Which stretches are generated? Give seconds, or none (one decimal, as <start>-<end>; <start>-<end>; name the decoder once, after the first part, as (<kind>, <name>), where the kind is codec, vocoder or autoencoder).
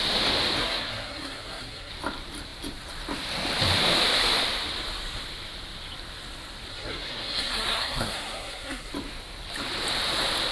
0.6-1.9 (codec, SNAC); 6.7-8.9